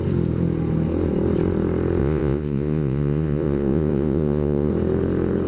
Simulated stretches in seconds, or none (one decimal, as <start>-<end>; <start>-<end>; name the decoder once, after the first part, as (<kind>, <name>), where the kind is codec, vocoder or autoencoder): 2.0-4.7 (vocoder, Vocos)